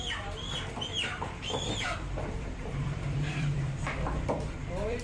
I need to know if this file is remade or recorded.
remade